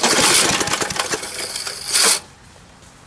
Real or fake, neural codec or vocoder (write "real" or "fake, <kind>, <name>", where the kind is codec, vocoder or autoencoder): real